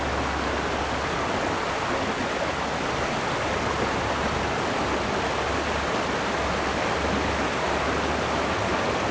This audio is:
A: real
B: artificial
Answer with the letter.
A